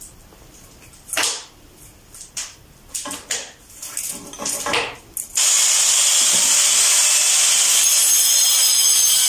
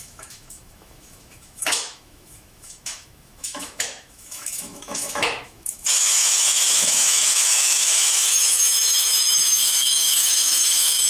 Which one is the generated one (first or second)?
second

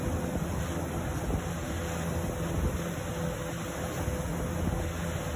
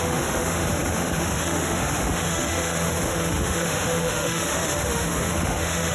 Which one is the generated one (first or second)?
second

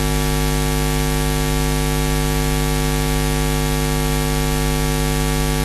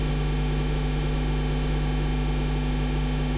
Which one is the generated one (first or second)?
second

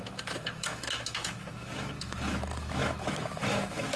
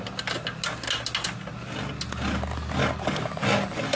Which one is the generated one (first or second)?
first